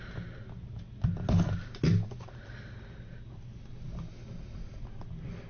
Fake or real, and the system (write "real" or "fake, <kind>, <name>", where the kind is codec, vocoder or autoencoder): real